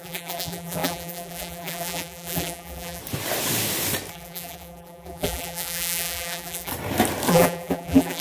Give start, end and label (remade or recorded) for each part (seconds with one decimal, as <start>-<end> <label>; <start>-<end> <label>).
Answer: 0.0-3.0 remade; 3.0-4.1 recorded; 4.1-6.7 remade; 6.7-7.3 recorded; 7.3-8.2 remade